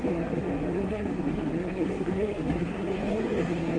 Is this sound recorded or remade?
remade